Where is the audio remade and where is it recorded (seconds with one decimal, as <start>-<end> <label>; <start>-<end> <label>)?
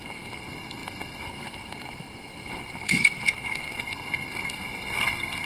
0.0-5.5 remade